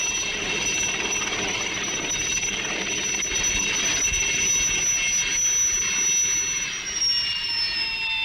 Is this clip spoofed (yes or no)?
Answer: no